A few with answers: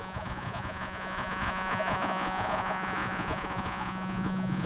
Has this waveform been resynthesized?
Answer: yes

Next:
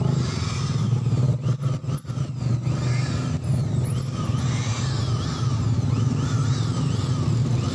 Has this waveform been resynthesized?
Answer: no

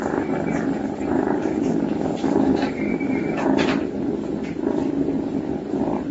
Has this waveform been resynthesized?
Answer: yes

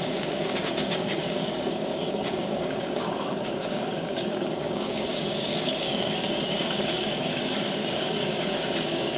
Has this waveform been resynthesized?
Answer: yes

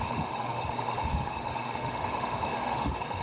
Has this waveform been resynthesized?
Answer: yes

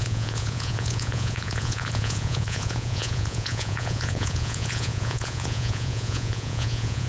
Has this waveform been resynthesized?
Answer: yes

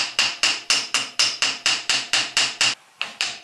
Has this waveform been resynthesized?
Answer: no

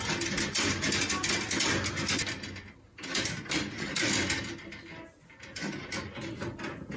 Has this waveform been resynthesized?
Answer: no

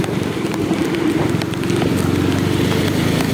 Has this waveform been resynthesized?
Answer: no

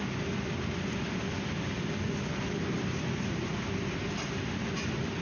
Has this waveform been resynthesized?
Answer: no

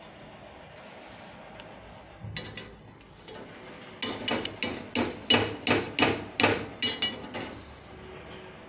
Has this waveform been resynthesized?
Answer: no